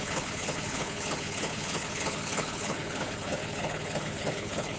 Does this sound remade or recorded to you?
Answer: remade